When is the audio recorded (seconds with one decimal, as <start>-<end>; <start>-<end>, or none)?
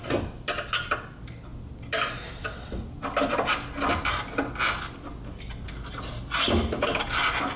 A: 0.0-7.6